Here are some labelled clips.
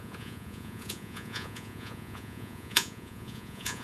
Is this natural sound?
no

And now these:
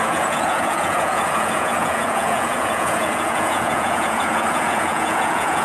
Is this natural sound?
no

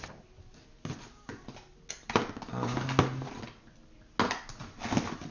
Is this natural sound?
yes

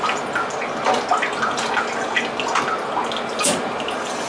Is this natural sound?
yes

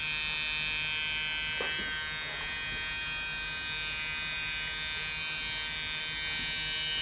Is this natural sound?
yes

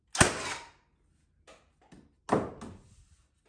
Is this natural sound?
yes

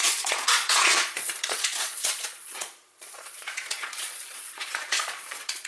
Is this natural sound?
no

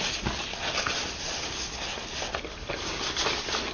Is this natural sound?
yes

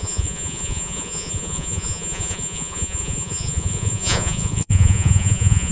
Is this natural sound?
no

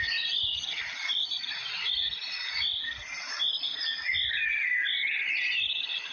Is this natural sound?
yes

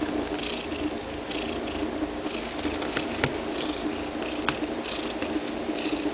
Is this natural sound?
yes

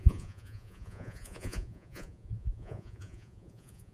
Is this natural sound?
no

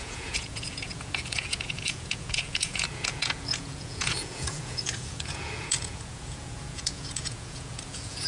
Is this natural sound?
no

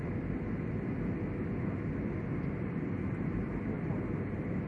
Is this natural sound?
yes